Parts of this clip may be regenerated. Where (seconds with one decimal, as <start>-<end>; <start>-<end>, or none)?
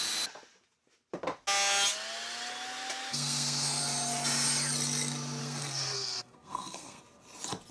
3.1-3.8; 5.4-7.0